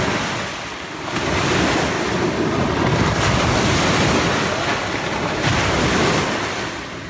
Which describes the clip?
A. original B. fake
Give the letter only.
A